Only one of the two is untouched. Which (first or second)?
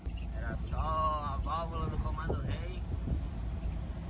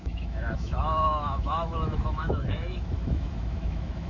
first